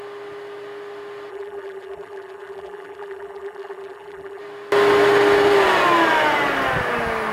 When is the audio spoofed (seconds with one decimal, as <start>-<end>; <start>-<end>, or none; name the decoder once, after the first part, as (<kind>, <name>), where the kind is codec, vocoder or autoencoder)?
1.3-4.4 (vocoder, BigVGAN v2)